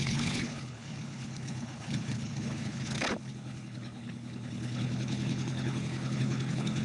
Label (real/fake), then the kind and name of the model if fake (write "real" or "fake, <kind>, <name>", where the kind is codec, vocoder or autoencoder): fake, codec, HILCodec